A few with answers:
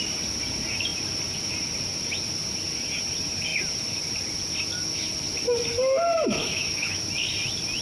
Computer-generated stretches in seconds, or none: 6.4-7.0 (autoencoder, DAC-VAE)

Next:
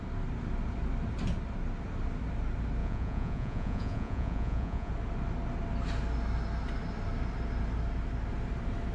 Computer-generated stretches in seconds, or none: 2.8-4.9 (vocoder, Vocos)